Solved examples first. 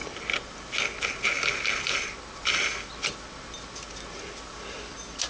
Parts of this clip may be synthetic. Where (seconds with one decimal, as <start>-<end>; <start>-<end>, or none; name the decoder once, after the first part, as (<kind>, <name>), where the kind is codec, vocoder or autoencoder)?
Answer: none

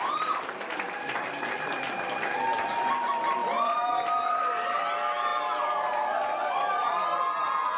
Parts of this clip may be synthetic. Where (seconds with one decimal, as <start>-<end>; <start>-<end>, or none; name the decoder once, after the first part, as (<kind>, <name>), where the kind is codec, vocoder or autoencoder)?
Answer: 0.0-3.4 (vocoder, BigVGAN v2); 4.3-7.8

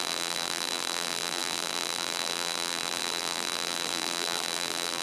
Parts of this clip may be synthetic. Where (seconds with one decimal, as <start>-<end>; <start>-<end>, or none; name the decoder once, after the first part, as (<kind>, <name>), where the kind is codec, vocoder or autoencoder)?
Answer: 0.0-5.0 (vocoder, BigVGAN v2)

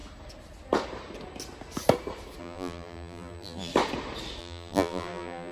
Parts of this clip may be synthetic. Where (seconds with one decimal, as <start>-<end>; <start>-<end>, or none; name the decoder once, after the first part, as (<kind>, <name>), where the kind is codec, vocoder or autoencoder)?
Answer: 2.4-3.7 (vocoder, BigVGAN v2); 4.4-5.5